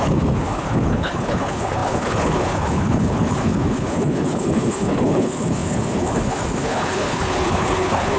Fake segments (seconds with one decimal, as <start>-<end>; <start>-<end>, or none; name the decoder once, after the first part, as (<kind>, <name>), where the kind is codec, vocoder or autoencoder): 0.0-8.2 (codec, HILCodec)